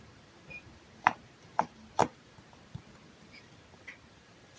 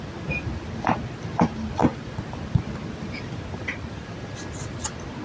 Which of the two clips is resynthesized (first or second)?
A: first